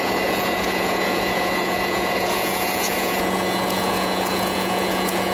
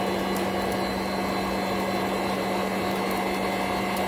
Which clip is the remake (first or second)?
first